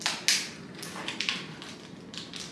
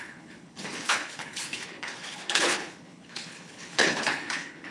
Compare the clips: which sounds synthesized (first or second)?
second